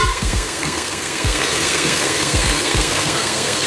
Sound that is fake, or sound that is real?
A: fake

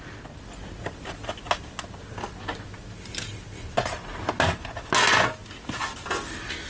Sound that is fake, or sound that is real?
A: real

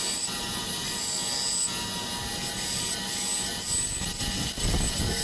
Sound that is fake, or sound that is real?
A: real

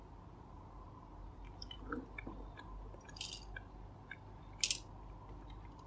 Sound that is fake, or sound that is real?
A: real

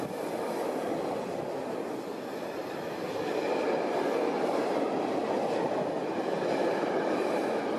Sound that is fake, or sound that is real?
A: real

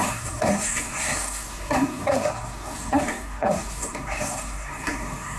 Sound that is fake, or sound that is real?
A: fake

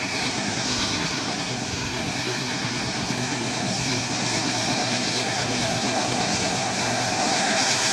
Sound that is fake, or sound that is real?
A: fake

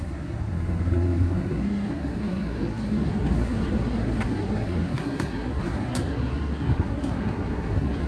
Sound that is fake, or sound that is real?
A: fake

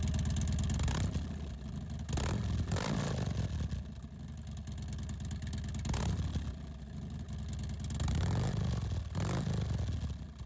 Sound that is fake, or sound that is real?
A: real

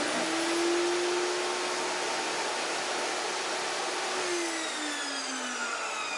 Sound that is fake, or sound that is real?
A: real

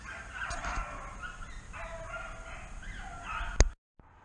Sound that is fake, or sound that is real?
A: real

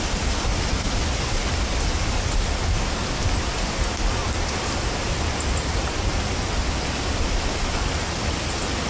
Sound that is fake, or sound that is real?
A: real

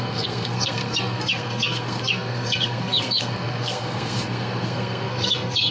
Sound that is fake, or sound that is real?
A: fake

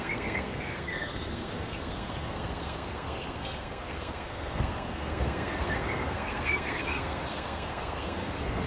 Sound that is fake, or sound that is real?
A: fake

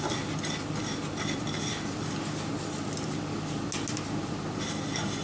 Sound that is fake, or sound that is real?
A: real